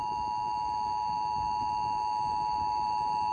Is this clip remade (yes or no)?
yes